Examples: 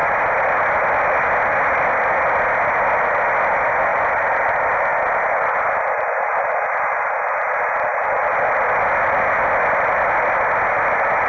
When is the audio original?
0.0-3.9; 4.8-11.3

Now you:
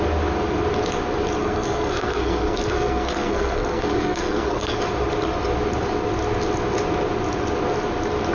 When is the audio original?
0.0-1.4; 4.8-8.3

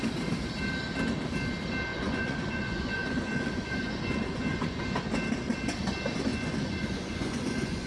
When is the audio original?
0.0-1.9; 4.8-6.3